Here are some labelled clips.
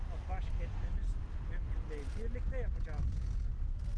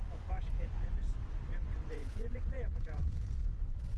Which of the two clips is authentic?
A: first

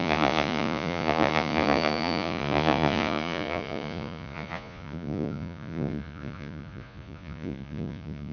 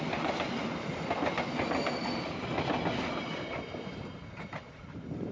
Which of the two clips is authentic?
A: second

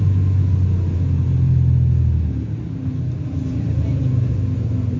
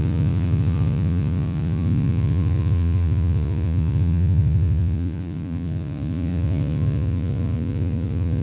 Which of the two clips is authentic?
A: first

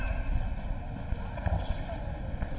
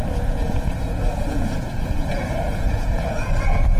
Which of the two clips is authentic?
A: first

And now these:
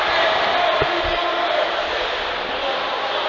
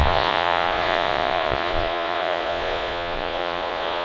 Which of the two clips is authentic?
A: first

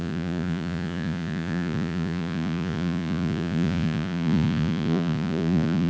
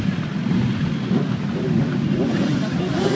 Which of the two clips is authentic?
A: second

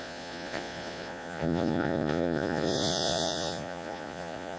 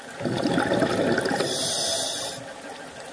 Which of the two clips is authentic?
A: second